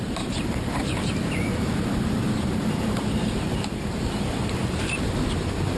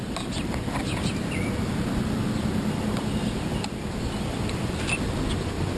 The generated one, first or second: first